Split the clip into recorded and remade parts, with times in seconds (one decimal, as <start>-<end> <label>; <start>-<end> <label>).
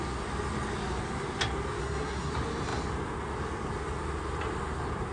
0.0-1.8 recorded; 1.8-2.3 remade; 2.3-5.1 recorded